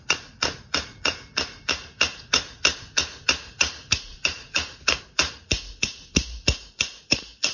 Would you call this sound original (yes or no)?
no